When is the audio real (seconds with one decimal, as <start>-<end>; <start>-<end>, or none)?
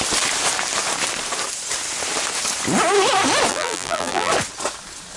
0.0-3.5; 4.3-5.2